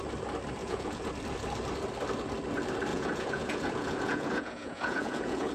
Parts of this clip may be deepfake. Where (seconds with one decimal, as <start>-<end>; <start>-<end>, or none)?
0.6-1.1; 2.9-5.5